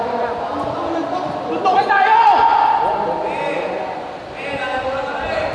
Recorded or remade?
recorded